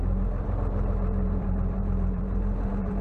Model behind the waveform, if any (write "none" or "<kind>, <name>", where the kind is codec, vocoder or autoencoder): vocoder, BigVGAN v2